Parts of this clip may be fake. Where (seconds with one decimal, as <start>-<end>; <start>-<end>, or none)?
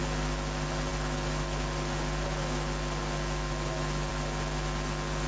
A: none